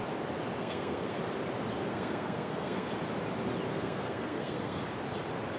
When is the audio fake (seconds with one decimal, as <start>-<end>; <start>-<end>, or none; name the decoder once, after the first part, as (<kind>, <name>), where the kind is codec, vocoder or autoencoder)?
0.6-1.2 (codec, SNAC); 1.9-2.9; 3.7-4.8